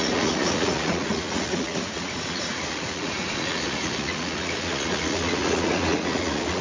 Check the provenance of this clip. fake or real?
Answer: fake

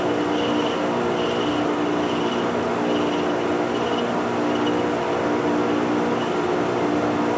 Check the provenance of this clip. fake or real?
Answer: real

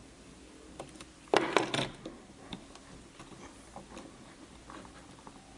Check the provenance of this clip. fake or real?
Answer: real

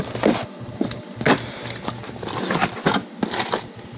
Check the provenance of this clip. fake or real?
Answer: real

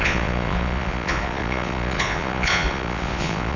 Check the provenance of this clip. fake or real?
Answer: fake